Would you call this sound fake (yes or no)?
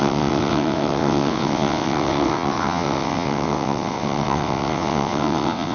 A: yes